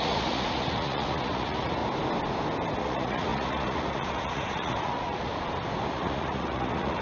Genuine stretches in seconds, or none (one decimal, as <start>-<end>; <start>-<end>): 1.8-2.8; 5.3-5.9